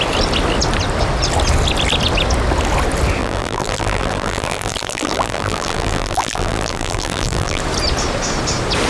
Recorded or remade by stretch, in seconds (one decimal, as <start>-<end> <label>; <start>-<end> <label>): 0.0-3.2 recorded; 3.2-7.6 remade; 7.6-8.9 recorded